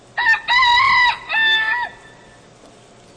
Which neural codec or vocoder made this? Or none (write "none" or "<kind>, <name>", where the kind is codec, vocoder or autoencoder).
none